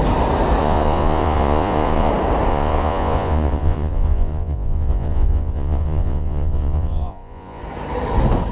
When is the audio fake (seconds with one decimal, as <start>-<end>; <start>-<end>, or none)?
0.6-2.1; 2.5-7.6